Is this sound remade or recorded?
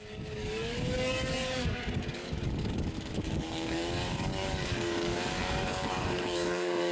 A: remade